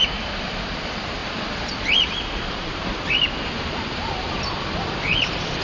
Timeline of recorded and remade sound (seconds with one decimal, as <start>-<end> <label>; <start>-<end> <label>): 0.0-5.6 remade